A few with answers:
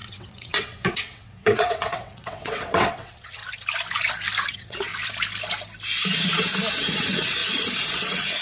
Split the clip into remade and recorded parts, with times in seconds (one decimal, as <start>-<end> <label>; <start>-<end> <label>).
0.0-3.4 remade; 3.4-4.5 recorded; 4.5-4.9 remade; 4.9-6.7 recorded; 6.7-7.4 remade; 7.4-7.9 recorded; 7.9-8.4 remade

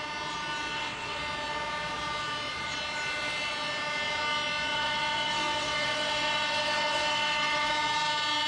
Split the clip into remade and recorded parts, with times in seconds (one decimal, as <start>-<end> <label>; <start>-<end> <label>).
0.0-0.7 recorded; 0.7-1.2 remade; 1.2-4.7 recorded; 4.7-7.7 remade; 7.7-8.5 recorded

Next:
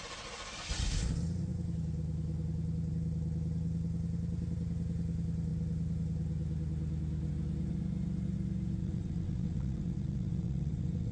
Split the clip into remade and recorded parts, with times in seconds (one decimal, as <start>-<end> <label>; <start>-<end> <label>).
0.0-8.8 recorded; 8.8-11.1 remade

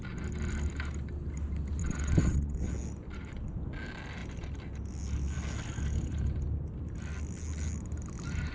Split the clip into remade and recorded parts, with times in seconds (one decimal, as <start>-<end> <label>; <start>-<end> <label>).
0.0-1.8 recorded; 1.8-2.7 remade; 2.7-8.5 recorded

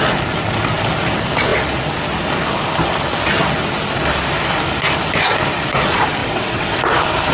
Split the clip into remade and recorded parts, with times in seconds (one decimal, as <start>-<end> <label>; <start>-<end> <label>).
0.0-6.2 recorded; 6.2-6.8 remade; 6.8-7.3 recorded